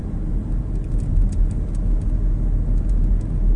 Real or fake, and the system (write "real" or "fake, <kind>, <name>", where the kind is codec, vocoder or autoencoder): real